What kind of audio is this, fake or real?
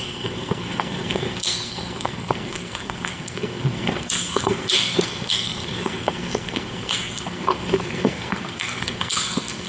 fake